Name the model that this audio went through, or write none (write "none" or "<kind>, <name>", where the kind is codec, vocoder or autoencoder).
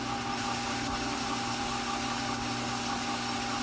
none